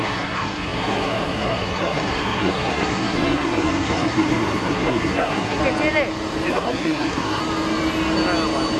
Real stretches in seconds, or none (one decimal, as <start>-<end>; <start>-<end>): 5.6-6.5; 7.4-8.8